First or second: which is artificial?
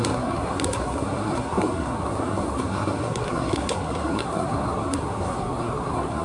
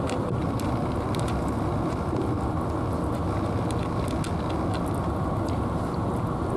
first